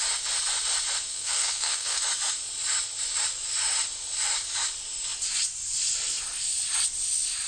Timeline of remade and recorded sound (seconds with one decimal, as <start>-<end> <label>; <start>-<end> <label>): 0.0-1.1 recorded; 1.1-2.0 remade; 2.0-7.5 recorded